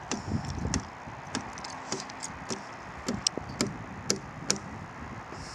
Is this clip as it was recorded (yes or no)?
yes